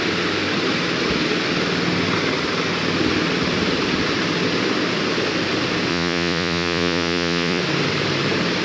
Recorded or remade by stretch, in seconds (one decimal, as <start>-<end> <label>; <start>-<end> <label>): 0.0-5.9 recorded; 5.9-7.6 remade; 7.6-8.6 recorded

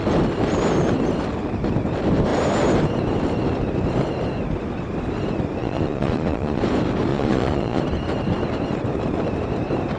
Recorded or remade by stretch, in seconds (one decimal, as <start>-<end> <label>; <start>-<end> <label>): 0.0-5.6 recorded; 5.6-6.6 remade; 6.6-7.1 recorded; 7.1-7.8 remade; 7.8-10.0 recorded

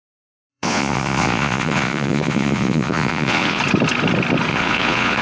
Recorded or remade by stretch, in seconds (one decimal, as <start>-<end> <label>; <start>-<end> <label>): 0.0-0.5 recorded; 0.5-3.6 remade; 3.6-4.5 recorded; 4.5-5.2 remade

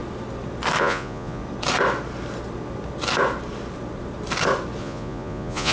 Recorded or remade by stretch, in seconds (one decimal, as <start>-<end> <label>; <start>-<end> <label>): 0.0-0.8 recorded; 0.8-1.4 remade; 1.4-4.8 recorded; 4.8-5.7 remade

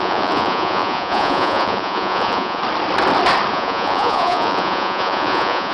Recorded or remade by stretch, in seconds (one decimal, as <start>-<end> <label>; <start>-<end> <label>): 0.0-2.6 remade; 2.6-3.5 recorded; 3.5-5.7 remade

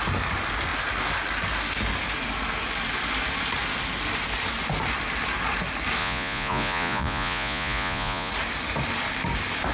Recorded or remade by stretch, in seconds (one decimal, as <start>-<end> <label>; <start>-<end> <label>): 0.0-6.0 recorded; 6.0-8.3 remade; 8.3-9.7 recorded